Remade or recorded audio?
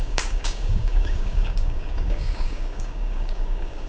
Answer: remade